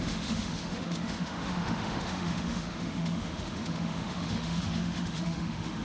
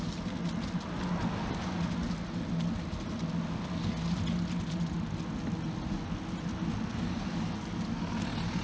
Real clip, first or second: second